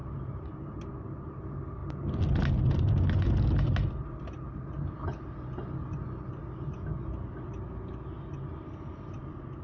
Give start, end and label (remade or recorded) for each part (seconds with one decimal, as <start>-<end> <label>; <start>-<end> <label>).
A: 0.0-1.4 remade; 1.4-9.6 recorded